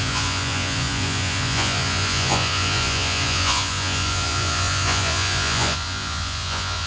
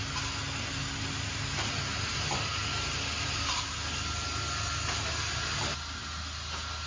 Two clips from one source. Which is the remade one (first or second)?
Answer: first